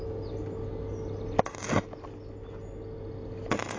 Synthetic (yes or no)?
no